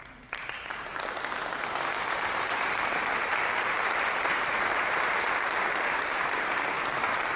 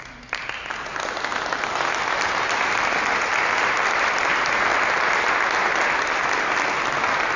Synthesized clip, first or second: first